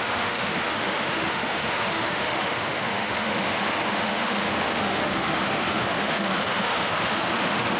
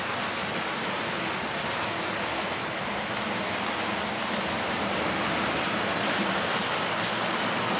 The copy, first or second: first